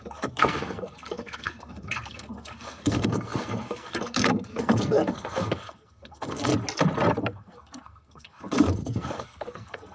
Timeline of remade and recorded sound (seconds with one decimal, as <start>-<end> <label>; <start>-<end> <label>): 0.0-6.5 remade; 6.5-7.2 recorded; 7.2-9.9 remade

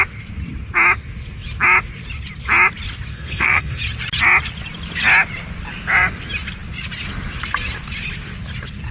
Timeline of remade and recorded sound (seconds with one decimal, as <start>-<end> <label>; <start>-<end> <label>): 0.0-3.1 recorded; 3.1-3.8 remade; 3.8-8.9 recorded

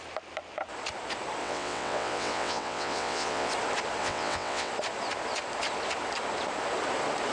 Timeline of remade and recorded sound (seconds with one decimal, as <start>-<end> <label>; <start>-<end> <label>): 0.0-1.4 recorded; 1.4-3.5 remade; 3.5-4.0 recorded; 4.0-4.7 remade; 4.7-7.3 recorded

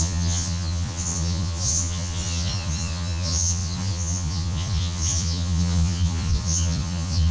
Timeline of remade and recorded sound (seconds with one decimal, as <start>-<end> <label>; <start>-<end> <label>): 0.0-7.3 remade

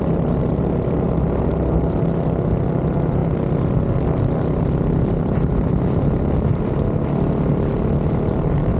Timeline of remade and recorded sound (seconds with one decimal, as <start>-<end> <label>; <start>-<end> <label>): 0.0-8.8 recorded

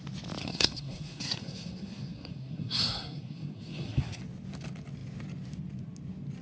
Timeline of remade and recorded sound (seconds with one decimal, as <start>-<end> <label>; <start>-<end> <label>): 0.0-0.4 recorded; 0.4-4.2 remade; 4.2-6.4 recorded

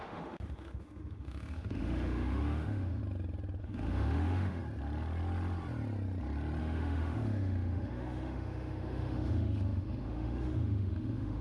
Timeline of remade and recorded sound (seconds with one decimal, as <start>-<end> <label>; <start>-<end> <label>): 0.0-3.0 remade; 3.0-3.6 recorded; 3.6-4.6 remade; 4.6-6.6 recorded; 6.6-11.4 remade